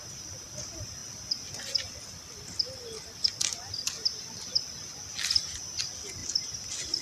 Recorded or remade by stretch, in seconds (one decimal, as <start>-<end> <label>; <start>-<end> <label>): 0.0-7.0 recorded